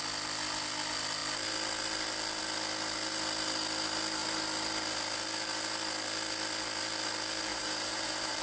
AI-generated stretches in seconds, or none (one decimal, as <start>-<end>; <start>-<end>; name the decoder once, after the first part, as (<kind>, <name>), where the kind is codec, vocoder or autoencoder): 7.5-8.4 (vocoder, BigVGAN v2)